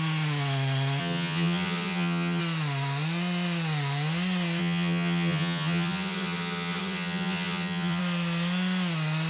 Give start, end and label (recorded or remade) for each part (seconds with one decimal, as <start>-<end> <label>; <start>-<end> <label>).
0.0-1.0 recorded; 1.0-2.4 remade; 2.4-4.6 recorded; 4.6-8.0 remade; 8.0-9.3 recorded